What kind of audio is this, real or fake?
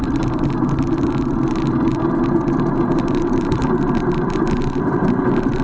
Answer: real